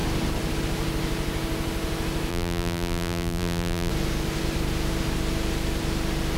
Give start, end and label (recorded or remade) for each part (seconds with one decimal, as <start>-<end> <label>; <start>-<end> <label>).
0.0-2.3 recorded; 2.3-3.9 remade; 3.9-6.4 recorded